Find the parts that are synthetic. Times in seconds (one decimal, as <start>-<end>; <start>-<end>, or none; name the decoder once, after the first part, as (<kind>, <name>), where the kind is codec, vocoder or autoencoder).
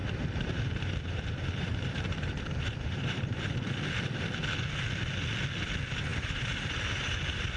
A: 0.0-3.5 (vocoder, BigVGAN v2); 6.1-7.6